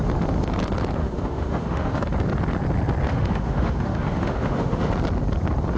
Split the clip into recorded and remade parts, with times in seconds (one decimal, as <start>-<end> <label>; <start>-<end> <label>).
0.0-1.0 recorded; 1.0-2.0 remade; 2.0-3.1 recorded; 3.1-4.9 remade; 4.9-5.8 recorded